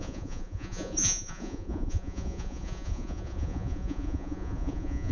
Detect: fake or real fake